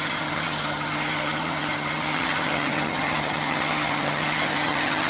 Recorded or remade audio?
remade